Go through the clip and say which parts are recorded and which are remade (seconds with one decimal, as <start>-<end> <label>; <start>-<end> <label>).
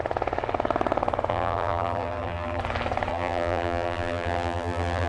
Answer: 0.0-1.3 recorded; 1.3-2.6 remade; 2.6-3.1 recorded; 3.1-5.1 remade